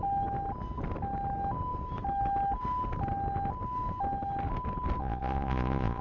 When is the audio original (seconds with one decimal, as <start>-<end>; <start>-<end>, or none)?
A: 0.0-5.0